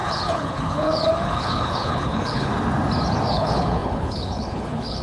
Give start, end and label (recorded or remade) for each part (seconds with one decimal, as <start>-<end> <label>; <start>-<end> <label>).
0.0-2.5 remade; 2.5-3.3 recorded; 3.3-5.0 remade